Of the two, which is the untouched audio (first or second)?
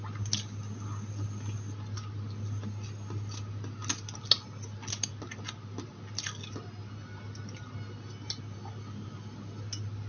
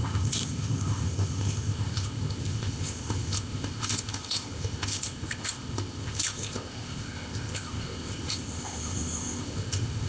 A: first